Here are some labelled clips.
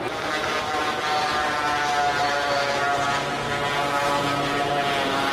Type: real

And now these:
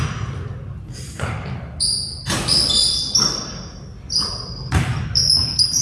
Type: real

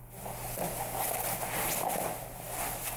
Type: real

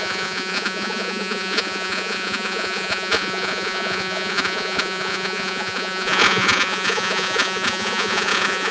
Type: fake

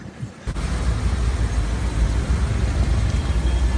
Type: real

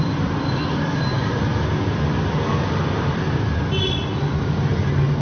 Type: real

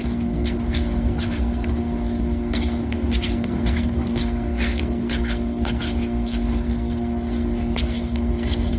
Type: fake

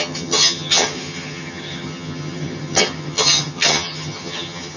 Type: fake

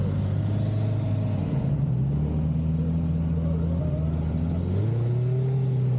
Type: real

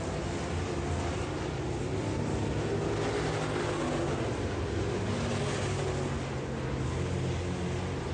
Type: real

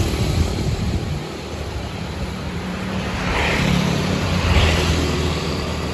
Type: fake